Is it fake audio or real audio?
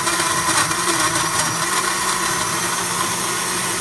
real